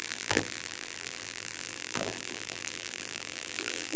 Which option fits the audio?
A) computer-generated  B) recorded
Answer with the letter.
A